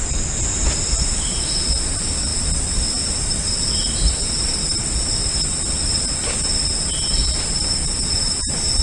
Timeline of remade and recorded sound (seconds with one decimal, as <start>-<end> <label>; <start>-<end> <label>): 0.0-8.8 recorded